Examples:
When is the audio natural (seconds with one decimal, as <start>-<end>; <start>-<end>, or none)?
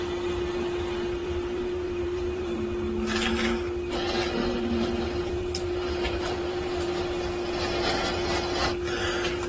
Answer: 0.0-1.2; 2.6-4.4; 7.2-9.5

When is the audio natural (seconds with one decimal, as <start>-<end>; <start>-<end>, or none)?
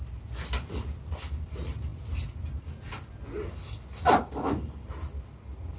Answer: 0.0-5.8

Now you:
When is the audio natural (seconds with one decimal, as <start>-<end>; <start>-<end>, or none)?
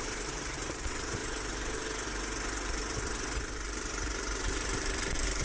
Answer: 1.2-4.4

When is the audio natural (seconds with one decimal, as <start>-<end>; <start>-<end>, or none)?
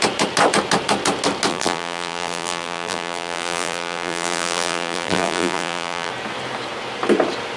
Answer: 0.0-1.5; 6.1-7.6